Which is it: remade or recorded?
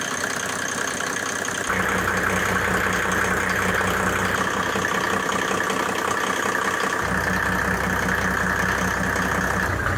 recorded